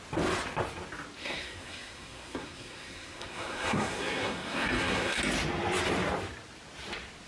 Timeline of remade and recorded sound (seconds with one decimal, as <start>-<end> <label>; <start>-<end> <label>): 0.0-1.2 recorded; 1.2-5.2 remade; 5.2-7.3 recorded